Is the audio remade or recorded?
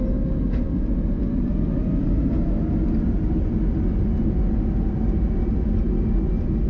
recorded